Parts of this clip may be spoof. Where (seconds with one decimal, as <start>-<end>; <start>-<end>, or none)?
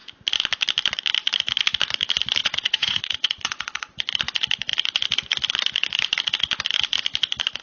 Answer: 2.4-3.9